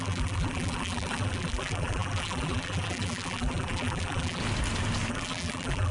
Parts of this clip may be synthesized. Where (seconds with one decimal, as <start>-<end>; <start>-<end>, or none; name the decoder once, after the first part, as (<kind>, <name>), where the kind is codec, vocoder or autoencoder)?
0.0-4.4 (vocoder, BigVGAN v2); 5.1-5.9